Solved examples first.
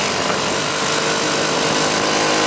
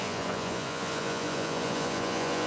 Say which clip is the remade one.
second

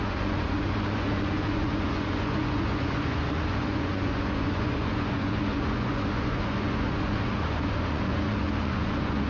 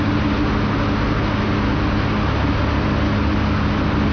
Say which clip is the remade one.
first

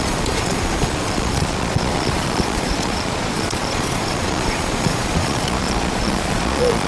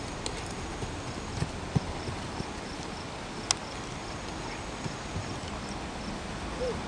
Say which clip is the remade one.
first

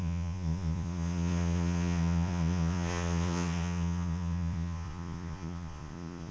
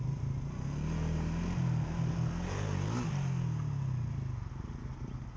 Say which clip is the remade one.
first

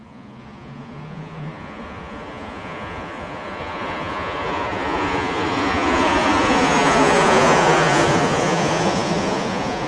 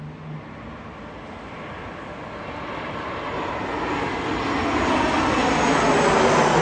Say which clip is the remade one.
first